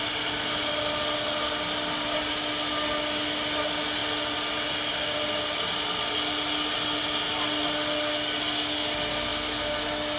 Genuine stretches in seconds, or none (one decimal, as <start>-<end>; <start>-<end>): 0.0-10.2